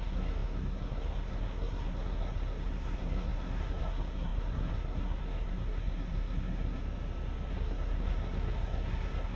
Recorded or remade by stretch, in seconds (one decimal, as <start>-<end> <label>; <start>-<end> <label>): 0.0-6.8 remade; 6.8-7.5 recorded; 7.5-9.4 remade